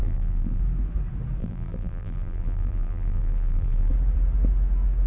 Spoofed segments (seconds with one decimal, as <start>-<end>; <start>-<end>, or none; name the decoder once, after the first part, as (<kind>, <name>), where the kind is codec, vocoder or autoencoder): 0.0-0.6 (vocoder, BigVGAN v2); 1.4-3.9